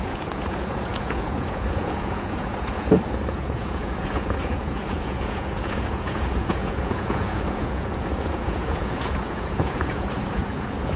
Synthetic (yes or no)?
yes